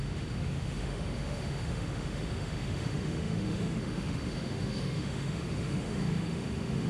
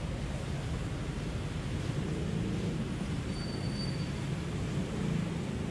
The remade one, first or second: first